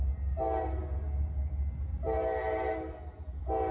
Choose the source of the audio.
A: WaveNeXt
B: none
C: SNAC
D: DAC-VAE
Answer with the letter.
B